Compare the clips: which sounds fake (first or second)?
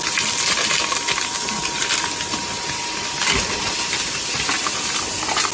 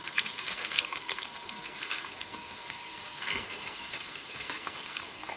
second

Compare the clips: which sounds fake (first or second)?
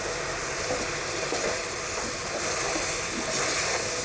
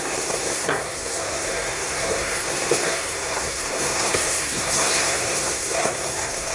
second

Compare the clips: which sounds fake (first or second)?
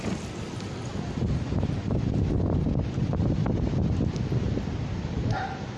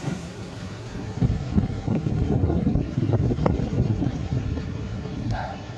second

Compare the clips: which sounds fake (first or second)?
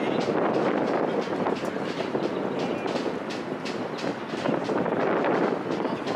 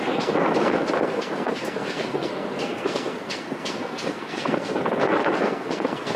second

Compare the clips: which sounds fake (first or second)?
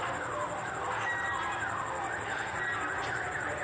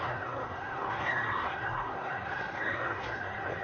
second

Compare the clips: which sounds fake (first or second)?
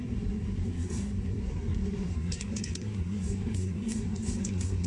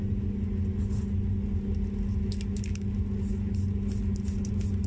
first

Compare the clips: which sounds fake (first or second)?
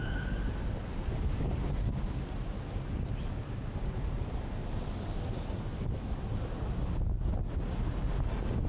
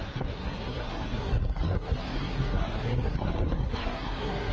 second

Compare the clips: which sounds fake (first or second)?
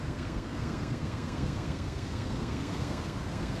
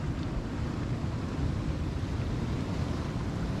first